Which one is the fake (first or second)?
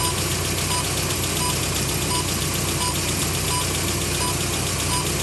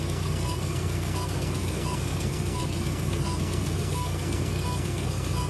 second